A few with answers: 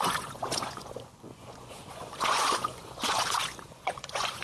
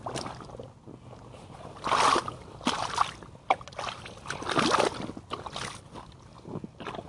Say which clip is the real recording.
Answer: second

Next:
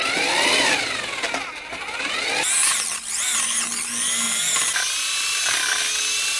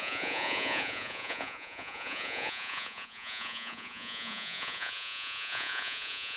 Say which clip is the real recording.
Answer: first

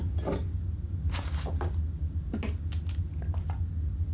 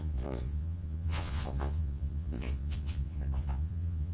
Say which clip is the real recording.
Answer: first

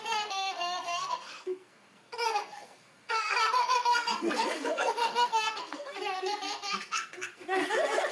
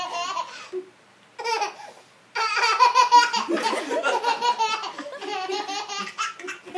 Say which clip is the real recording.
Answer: second